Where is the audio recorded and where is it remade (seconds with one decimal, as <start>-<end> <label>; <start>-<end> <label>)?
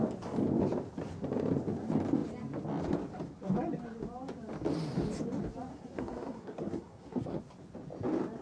0.0-5.7 recorded; 5.7-7.4 remade; 7.4-8.4 recorded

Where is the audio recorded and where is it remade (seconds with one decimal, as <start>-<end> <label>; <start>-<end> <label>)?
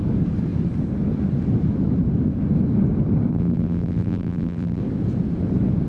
0.0-3.3 recorded; 3.3-4.8 remade; 4.8-5.9 recorded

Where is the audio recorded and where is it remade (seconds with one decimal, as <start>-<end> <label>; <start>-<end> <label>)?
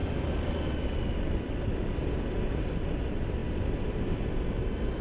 0.0-5.0 recorded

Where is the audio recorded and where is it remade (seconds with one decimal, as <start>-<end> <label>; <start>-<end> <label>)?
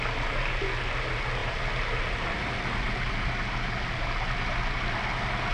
0.0-5.5 recorded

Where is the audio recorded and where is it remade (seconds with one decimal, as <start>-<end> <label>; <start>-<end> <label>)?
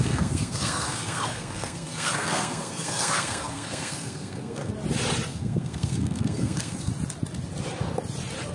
0.0-4.7 remade; 4.7-5.3 recorded; 5.3-6.9 remade; 6.9-8.5 recorded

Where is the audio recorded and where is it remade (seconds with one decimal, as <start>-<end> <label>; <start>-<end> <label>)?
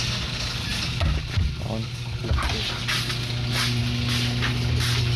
0.0-5.2 recorded